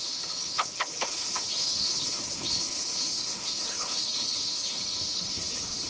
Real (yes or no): no